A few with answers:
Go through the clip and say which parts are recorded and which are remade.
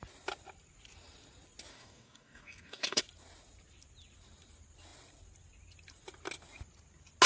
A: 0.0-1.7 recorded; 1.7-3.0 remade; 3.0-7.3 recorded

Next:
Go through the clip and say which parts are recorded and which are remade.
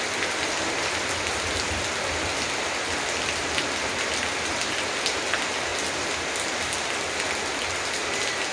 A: 0.0-8.5 recorded